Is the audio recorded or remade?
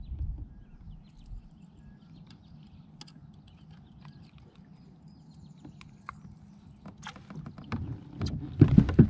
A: recorded